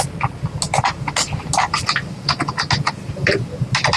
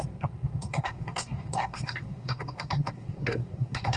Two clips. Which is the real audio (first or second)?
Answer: first